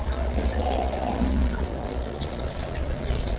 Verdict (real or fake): fake